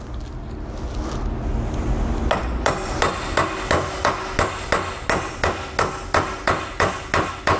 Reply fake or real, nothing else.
real